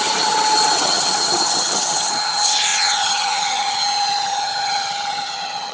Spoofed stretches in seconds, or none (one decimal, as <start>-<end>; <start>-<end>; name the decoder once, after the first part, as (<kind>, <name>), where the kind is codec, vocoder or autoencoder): 0.0-5.7 (vocoder, HiFi-GAN)